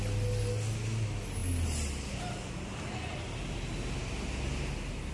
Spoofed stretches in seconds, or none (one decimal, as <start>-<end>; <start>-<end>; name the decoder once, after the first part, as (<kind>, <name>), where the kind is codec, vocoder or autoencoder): none